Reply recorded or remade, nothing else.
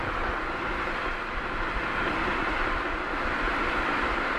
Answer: recorded